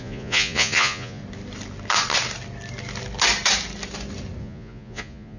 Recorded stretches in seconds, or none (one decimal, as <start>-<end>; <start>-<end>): 1.2-4.4